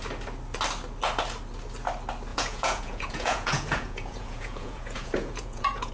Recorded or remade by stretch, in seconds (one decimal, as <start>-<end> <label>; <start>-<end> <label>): 0.0-2.3 recorded; 2.3-5.9 remade